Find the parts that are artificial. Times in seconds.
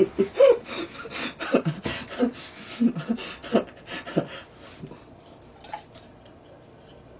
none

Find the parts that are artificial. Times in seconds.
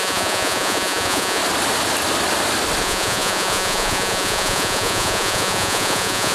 0.0-1.4; 2.8-6.3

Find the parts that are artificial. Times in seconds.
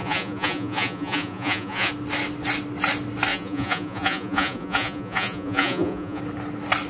0.0-1.9; 3.3-6.2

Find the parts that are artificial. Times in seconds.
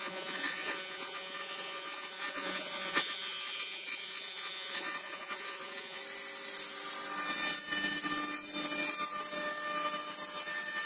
0.0-6.0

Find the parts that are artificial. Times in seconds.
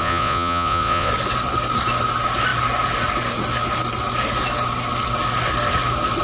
0.0-1.1